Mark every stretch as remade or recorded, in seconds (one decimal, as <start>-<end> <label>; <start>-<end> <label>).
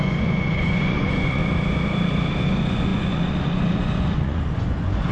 0.0-1.4 remade; 1.4-2.4 recorded; 2.4-5.1 remade